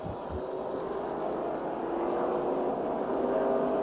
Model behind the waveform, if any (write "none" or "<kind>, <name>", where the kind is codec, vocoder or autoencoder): none